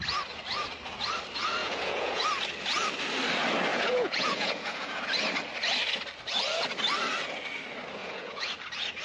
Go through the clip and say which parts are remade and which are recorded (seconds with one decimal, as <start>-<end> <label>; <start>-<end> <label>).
0.0-1.6 recorded; 1.6-2.2 remade; 2.2-3.7 recorded; 3.7-5.0 remade; 5.0-8.0 recorded; 8.0-8.5 remade; 8.5-9.0 recorded